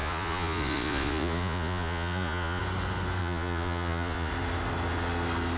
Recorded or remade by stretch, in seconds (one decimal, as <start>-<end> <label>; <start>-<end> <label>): 0.0-2.6 remade; 2.6-3.2 recorded; 3.2-4.3 remade; 4.3-5.6 recorded

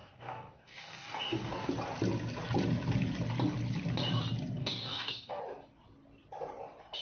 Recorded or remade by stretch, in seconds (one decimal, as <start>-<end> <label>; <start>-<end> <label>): 0.0-1.7 remade; 1.7-4.6 recorded; 4.6-5.4 remade; 5.4-7.0 recorded